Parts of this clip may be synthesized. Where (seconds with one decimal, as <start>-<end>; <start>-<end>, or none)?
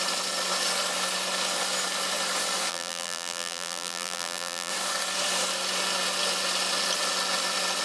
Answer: 2.7-4.7